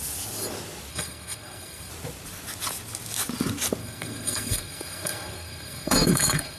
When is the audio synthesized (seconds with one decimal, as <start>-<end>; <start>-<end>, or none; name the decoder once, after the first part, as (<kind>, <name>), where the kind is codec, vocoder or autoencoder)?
0.9-1.9 (codec, SNAC); 3.8-6.6